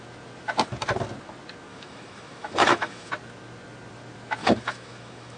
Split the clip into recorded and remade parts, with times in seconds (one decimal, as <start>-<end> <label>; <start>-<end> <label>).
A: 0.0-1.7 recorded; 1.7-3.1 remade; 3.1-4.4 recorded; 4.4-5.4 remade